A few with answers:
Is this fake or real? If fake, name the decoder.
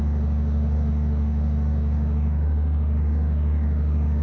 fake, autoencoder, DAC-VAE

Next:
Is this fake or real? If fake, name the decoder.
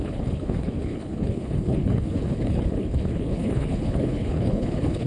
fake, codec, HILCodec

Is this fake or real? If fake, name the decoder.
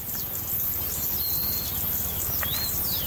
real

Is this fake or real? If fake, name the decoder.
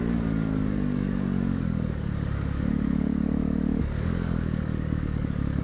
fake, codec, DAC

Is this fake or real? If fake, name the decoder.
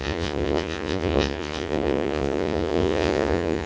fake, vocoder, Vocos